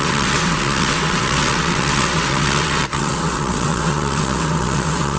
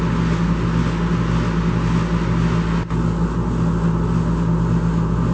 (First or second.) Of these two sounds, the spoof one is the first